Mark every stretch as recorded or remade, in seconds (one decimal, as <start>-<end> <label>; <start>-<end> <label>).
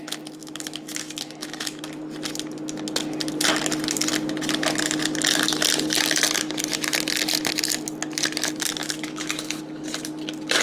0.0-0.4 recorded; 0.4-1.8 remade; 1.8-8.8 recorded; 8.8-9.6 remade; 9.6-10.6 recorded